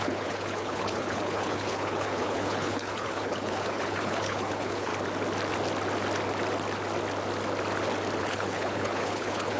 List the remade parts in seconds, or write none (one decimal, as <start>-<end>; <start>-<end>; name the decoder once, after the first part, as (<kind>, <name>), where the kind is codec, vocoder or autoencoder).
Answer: 0.0-4.9 (codec, HILCodec); 8.2-9.6